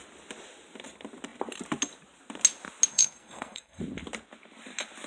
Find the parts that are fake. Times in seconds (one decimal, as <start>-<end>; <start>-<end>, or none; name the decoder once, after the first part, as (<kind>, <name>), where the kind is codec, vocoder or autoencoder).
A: 2.9-3.8 (codec, SNAC)